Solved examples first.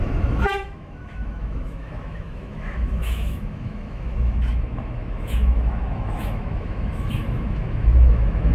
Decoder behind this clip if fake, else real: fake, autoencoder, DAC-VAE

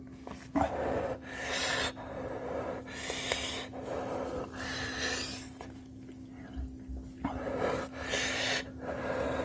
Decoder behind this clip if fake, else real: real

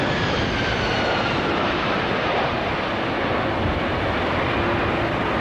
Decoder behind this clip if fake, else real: real